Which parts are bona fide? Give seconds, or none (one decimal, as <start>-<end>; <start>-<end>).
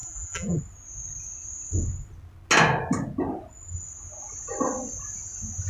0.6-5.7